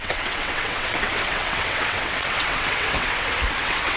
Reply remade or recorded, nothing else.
remade